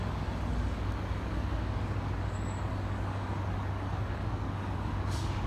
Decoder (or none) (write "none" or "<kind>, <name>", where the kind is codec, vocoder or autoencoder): codec, DAC